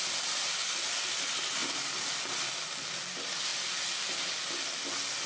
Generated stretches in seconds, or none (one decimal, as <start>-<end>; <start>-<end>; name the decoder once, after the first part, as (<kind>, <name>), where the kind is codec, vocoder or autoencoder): none